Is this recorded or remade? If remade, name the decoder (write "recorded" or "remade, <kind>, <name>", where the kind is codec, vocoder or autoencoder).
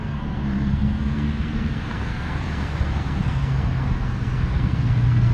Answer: remade, codec, SNAC